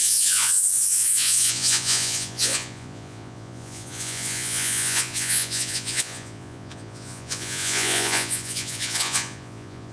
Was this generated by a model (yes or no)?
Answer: yes